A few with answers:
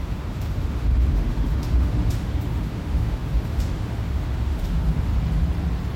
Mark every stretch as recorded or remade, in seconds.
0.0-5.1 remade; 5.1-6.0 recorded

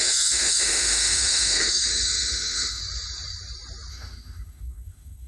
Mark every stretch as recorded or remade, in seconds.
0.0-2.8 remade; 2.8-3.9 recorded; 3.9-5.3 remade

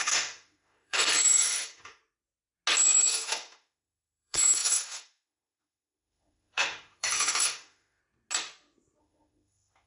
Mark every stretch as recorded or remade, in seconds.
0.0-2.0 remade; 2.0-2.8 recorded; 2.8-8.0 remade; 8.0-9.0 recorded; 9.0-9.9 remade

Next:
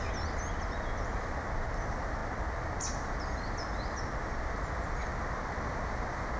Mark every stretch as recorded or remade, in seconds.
0.0-6.4 recorded